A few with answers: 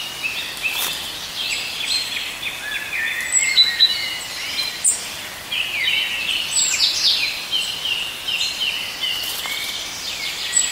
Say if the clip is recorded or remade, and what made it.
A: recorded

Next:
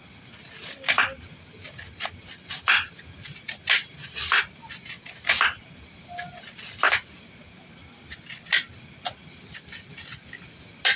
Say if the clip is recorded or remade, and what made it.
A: recorded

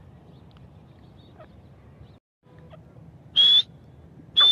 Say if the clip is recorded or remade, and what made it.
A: recorded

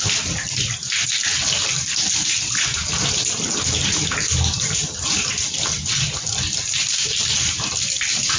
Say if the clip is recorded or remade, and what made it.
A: recorded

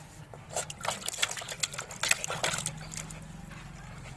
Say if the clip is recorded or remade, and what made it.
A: recorded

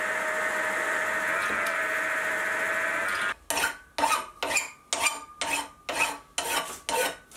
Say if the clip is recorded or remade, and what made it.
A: recorded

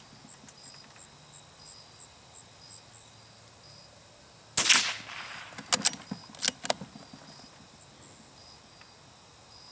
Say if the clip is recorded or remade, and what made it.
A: recorded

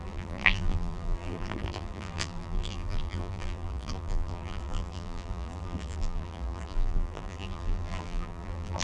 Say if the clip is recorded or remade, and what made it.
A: remade, vocoder, BigVGAN v2